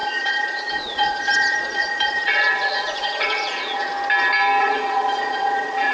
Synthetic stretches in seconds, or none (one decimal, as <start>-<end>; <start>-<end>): 0.0-3.9; 4.6-5.9